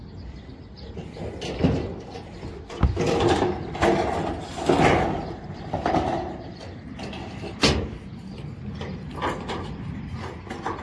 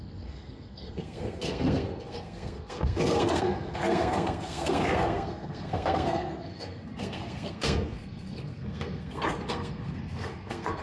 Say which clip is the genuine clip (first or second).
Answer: first